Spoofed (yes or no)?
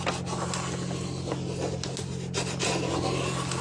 no